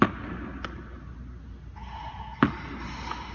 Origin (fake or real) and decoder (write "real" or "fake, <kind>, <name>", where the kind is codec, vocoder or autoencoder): real